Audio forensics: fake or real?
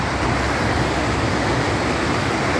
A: real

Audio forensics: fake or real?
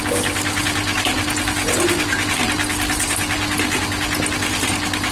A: real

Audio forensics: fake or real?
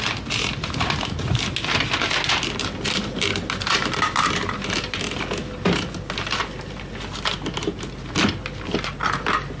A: real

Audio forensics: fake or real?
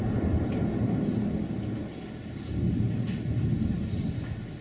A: real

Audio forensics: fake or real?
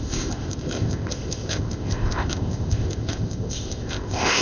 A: fake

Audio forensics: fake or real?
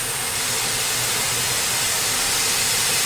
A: real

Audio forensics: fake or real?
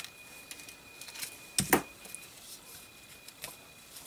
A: real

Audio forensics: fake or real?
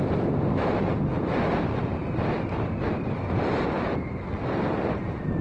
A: fake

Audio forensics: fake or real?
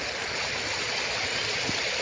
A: real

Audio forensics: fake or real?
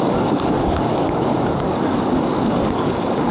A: fake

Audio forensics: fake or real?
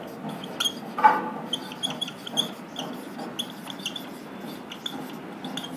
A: real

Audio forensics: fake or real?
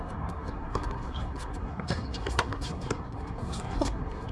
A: fake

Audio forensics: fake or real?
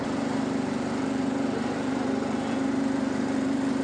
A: fake